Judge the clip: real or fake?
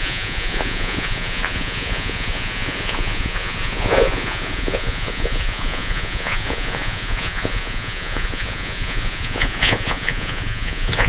fake